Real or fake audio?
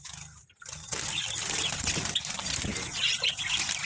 real